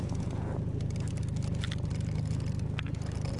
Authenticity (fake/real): real